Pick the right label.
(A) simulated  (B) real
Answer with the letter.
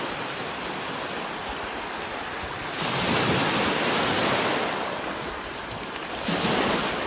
B